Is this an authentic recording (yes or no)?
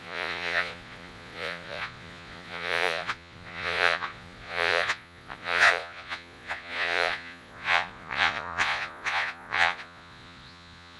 no